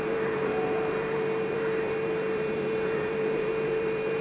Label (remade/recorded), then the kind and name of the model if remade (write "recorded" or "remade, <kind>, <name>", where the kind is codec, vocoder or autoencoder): remade, vocoder, BigVGAN v2